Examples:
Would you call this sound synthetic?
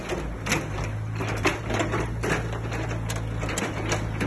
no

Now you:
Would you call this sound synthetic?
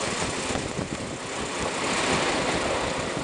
no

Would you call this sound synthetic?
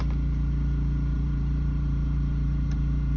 yes